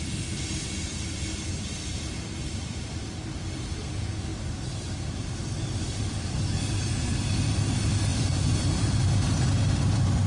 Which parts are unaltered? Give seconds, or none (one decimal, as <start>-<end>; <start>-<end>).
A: 0.0-4.3; 5.4-8.1; 9.1-10.3